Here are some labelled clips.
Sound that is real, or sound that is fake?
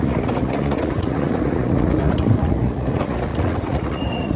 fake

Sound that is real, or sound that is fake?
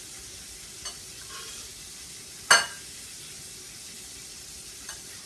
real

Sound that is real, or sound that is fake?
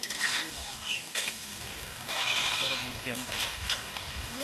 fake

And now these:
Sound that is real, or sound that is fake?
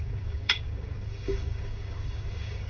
fake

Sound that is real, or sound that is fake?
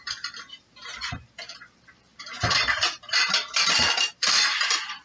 fake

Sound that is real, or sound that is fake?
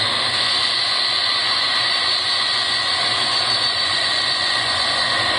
fake